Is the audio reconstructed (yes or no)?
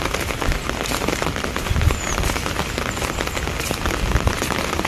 no